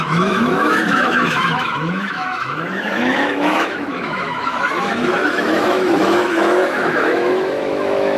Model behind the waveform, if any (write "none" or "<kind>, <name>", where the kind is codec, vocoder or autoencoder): autoencoder, DAC-VAE